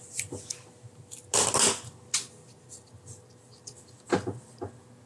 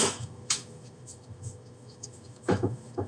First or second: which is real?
first